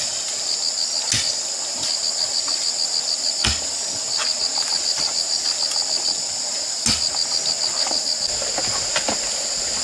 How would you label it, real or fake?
real